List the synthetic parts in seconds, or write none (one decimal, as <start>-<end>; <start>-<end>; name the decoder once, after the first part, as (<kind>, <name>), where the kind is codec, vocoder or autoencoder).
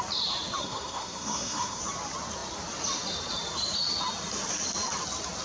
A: 0.6-1.8 (codec, SNAC)